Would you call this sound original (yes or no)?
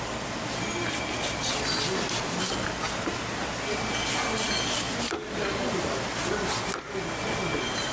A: yes